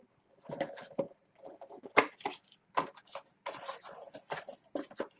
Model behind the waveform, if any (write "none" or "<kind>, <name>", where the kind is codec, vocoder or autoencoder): none